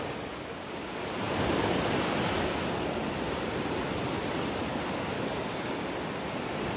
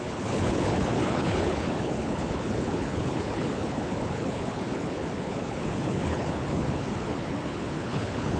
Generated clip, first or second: second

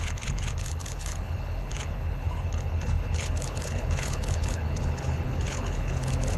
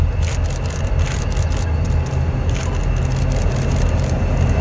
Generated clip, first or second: first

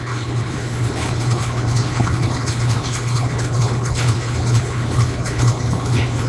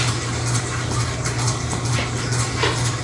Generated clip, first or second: first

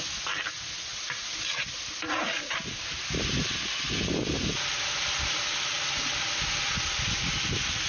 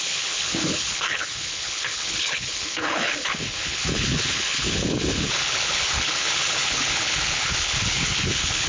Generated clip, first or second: second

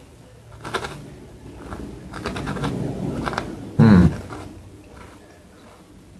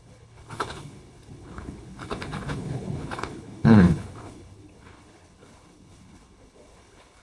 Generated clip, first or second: second